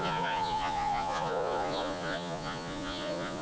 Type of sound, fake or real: fake